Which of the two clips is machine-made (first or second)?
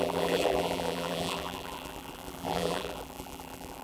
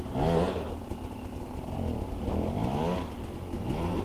first